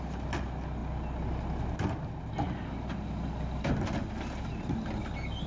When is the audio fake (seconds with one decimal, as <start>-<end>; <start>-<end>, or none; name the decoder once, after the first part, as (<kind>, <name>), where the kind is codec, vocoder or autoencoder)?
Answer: none